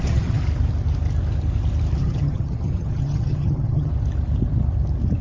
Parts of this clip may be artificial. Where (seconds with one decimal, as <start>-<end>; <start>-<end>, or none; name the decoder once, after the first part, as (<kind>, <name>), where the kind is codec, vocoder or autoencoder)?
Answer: 0.0-0.4 (vocoder, HiFi-GAN); 2.0-3.9